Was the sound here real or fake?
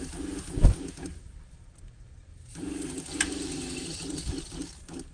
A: real